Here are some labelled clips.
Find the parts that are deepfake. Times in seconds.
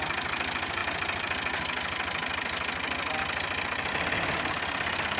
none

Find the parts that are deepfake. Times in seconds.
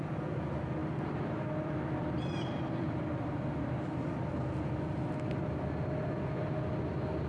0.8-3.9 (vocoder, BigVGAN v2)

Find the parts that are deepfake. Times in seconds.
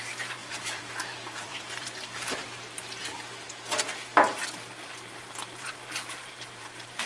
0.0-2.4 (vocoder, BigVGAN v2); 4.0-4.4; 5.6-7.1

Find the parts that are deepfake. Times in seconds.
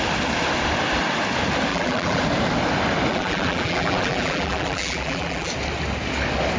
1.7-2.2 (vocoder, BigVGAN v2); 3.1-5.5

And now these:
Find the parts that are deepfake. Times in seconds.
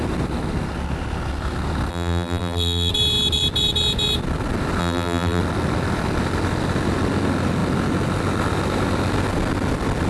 1.9-2.9 (vocoder, BigVGAN v2); 4.8-5.4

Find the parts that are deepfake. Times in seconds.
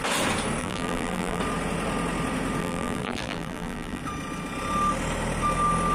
0.6-1.4 (vocoder, BigVGAN v2); 2.6-4.0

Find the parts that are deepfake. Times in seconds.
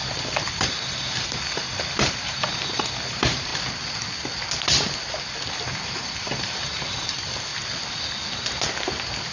0.0-3.5 (vocoder, BigVGAN v2); 5.5-7.5